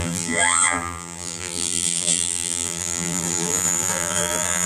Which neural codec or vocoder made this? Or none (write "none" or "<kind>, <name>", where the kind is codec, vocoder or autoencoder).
vocoder, BigVGAN v2